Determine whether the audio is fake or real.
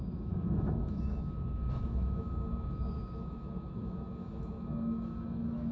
fake